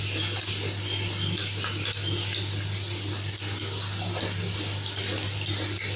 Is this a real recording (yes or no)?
yes